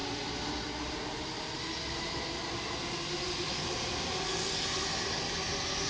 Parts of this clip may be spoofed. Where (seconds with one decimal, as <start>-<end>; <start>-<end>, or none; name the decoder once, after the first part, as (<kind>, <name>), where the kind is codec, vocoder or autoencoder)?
none